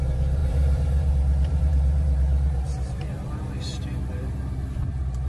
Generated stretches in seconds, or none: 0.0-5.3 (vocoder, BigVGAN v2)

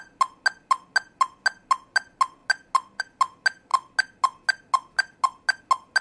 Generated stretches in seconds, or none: none

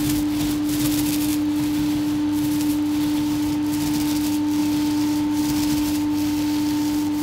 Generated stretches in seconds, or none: none

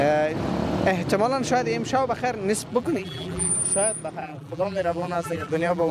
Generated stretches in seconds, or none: 2.7-3.5 (vocoder, BigVGAN v2); 4.2-5.9